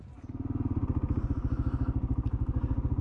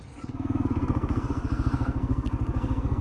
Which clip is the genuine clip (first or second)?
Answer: first